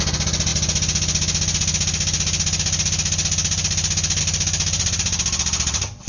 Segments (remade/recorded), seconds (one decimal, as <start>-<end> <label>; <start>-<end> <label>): 0.0-6.1 recorded